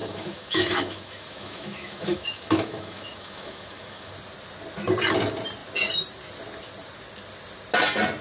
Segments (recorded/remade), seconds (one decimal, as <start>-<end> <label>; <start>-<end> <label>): 0.0-4.1 remade; 4.1-8.2 recorded